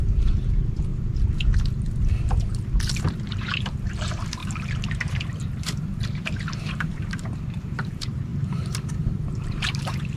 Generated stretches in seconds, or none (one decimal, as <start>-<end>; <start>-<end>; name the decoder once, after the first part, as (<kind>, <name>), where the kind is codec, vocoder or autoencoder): 0.0-0.9 (vocoder, BigVGAN v2); 2.1-10.2